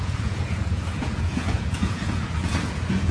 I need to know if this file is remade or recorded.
remade